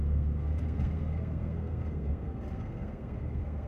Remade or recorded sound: remade